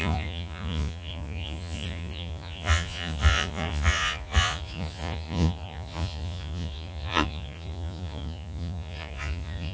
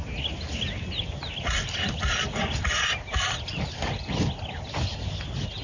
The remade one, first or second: first